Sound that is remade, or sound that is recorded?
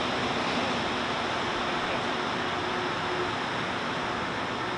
recorded